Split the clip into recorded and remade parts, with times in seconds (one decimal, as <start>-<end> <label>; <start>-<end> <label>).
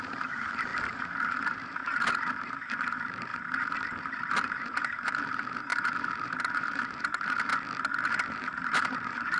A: 0.0-0.7 remade; 0.7-1.4 recorded; 1.4-3.3 remade; 3.3-4.0 recorded; 4.0-7.5 remade; 7.5-8.1 recorded; 8.1-9.4 remade